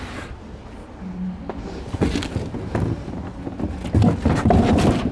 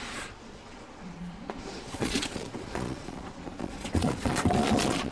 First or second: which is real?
first